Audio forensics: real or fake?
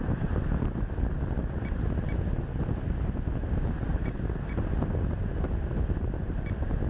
real